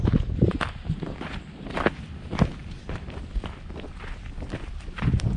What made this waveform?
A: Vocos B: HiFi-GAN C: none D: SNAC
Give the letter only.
C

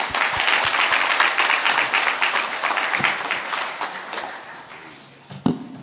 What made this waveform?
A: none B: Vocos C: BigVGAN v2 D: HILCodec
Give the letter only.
A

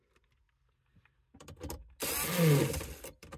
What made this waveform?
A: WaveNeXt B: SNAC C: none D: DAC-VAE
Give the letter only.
C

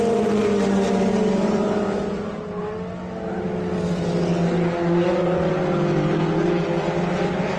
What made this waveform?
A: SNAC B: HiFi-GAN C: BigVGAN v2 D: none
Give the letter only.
D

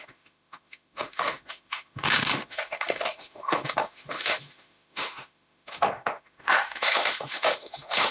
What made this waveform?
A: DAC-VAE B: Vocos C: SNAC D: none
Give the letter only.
A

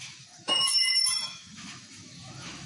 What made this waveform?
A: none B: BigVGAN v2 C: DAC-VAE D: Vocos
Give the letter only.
C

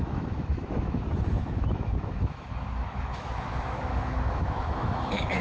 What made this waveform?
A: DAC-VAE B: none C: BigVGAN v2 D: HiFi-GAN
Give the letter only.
A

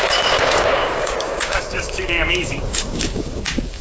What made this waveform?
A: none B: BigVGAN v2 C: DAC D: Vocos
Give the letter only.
C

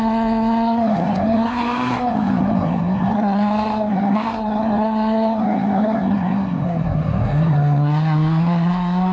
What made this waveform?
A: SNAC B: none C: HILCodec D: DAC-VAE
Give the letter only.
A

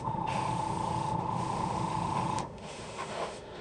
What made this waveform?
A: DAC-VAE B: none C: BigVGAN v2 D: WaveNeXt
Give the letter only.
A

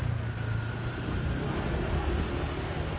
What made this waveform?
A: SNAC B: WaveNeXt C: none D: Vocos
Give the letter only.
C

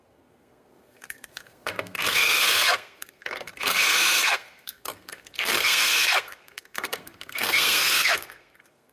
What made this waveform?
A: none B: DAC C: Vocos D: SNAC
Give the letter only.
D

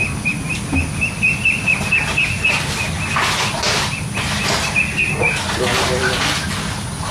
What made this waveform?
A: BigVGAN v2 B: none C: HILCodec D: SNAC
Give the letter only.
B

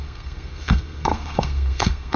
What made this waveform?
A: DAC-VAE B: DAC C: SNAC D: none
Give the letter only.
C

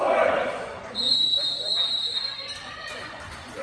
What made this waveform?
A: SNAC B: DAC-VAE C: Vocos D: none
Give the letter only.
C